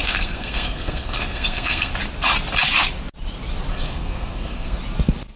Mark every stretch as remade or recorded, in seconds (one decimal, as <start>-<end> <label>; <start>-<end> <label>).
0.0-1.9 remade; 1.9-3.7 recorded; 3.7-4.8 remade; 4.8-5.4 recorded